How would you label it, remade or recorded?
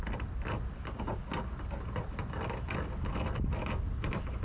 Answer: recorded